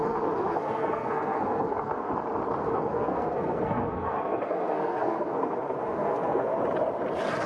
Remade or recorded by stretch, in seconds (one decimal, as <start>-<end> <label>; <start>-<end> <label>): 0.0-2.1 remade; 2.1-2.6 recorded; 2.6-6.6 remade; 6.6-7.5 recorded